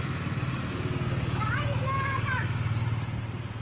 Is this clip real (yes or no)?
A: yes